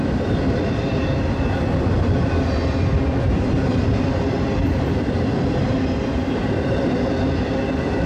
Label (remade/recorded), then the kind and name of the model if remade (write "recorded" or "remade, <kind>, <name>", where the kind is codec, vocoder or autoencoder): remade, vocoder, BigVGAN v2